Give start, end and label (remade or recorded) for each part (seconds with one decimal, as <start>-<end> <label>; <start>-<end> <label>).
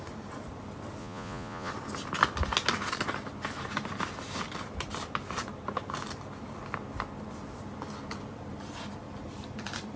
0.0-1.0 recorded; 1.0-1.7 remade; 1.7-10.0 recorded